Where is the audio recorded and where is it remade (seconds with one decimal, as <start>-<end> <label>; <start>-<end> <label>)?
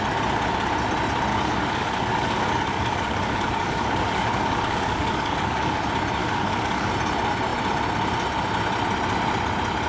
0.0-1.3 recorded; 1.3-5.8 remade; 5.8-6.2 recorded; 6.2-6.9 remade; 6.9-9.9 recorded